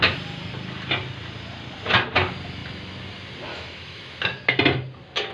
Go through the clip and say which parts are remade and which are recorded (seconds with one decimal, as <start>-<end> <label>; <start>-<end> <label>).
0.0-3.5 recorded; 3.5-4.0 remade; 4.0-5.3 recorded